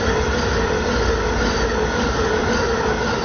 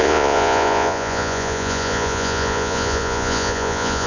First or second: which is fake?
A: second